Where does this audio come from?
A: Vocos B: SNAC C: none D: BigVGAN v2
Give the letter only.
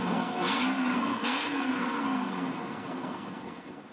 B